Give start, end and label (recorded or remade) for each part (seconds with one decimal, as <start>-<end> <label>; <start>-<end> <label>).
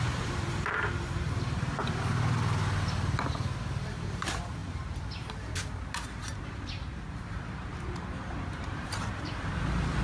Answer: 0.0-1.8 remade; 1.8-3.7 recorded; 3.7-10.0 remade